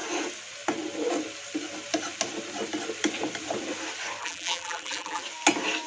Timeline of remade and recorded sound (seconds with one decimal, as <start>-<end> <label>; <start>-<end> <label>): 0.0-4.2 recorded; 4.2-5.2 remade; 5.2-5.9 recorded